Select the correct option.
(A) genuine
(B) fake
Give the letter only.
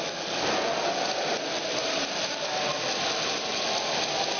A